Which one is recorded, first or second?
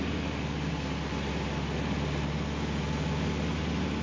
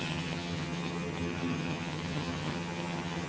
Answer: first